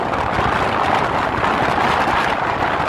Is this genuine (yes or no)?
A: yes